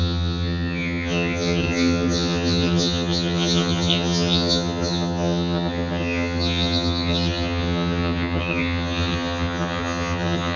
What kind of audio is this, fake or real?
fake